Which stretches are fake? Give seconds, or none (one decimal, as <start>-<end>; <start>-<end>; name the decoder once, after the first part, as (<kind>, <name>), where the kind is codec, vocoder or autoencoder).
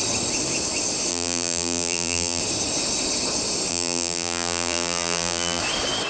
1.1-2.4 (vocoder, BigVGAN v2); 3.7-5.6